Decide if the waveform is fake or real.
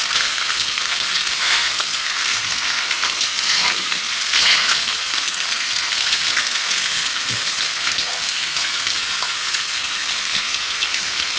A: fake